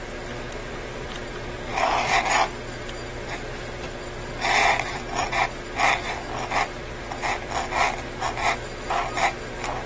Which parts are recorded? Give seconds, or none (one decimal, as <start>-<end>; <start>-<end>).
0.0-0.6; 1.1-1.7; 2.2-4.6; 7.5-9.9